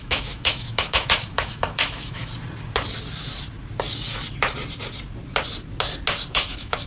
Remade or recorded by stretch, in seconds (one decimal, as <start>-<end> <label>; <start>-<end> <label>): 0.0-2.3 remade; 2.3-6.3 recorded; 6.3-6.9 remade